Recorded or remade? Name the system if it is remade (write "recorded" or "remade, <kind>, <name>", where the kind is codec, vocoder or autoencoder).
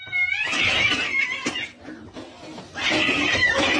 remade, vocoder, BigVGAN v2